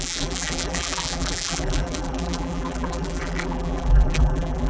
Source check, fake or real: fake